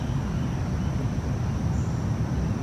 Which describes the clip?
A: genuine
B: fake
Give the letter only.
A